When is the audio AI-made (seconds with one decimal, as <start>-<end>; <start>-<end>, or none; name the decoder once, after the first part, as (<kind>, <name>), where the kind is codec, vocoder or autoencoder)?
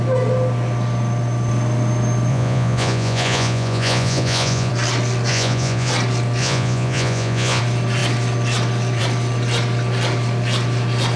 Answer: 2.3-4.7 (vocoder, Vocos); 5.3-5.9; 6.4-7.6